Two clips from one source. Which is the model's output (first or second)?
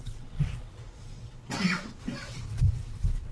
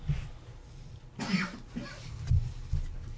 first